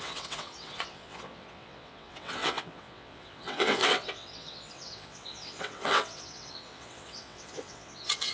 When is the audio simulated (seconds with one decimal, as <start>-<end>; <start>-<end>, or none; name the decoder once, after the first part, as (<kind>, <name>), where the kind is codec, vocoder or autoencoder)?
0.0-8.3 (vocoder, WaveNeXt)